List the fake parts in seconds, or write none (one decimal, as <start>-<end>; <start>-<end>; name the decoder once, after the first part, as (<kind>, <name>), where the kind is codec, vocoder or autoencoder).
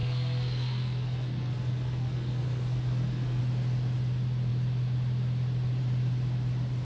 0.0-3.4 (codec, SNAC)